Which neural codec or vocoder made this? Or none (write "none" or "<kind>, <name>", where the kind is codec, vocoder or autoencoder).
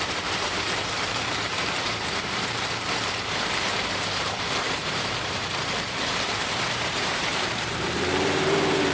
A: vocoder, BigVGAN v2